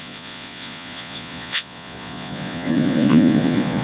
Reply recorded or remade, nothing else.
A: remade